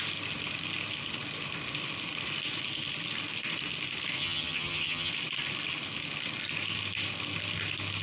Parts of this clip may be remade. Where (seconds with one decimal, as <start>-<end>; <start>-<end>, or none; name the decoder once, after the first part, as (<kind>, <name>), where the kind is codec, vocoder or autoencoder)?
4.2-5.1 (vocoder, HiFi-GAN)

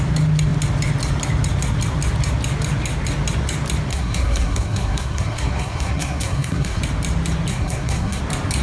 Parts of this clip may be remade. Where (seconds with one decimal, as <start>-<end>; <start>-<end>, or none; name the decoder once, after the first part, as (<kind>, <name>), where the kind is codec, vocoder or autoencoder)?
3.9-6.8 (codec, SNAC); 7.5-8.2